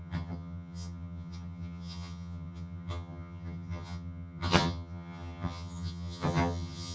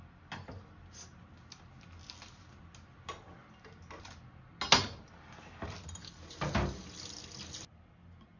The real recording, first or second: second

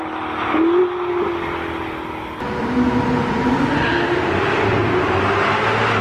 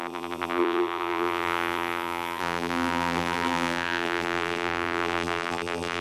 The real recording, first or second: first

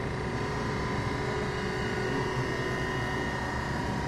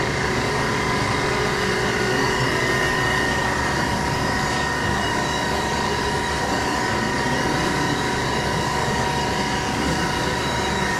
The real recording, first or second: first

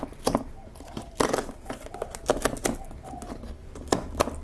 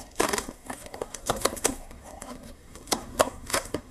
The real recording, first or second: first